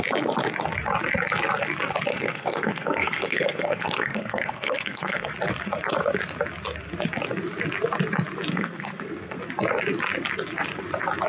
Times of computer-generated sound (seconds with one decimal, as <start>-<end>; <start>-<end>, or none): 2.1-5.3; 8.5-9.4